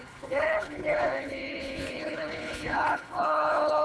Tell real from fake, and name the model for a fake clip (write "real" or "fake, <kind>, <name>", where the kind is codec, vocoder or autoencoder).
fake, codec, HILCodec